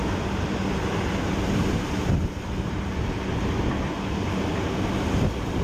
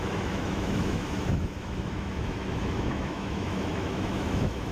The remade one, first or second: second